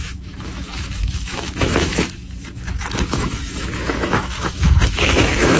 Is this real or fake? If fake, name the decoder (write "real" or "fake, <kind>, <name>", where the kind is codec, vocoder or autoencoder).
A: fake, autoencoder, DAC-VAE